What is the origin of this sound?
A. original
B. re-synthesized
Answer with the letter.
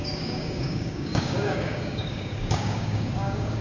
B